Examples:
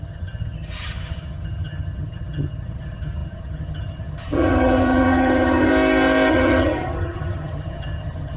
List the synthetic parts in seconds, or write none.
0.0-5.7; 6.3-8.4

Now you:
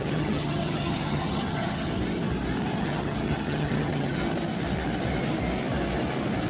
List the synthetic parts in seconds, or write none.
0.0-1.9; 2.8-4.2

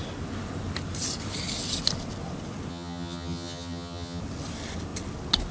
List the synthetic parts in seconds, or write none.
2.7-4.2

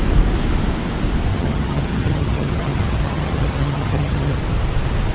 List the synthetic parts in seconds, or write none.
1.3-4.4

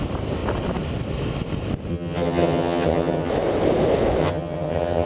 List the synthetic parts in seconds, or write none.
1.9-3.3; 4.2-5.1

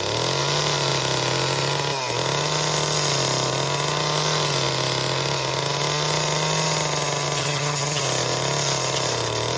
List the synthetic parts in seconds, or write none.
7.4-8.0

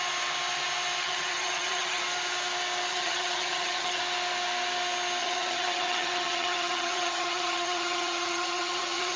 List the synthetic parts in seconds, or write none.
1.0-2.0; 2.9-4.0; 5.2-9.2

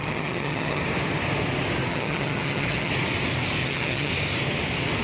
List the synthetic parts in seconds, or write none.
0.0-0.8; 1.9-2.9; 3.6-4.1